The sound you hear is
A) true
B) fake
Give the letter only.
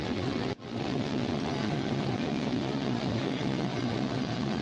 B